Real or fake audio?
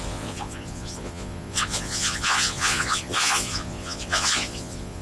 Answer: fake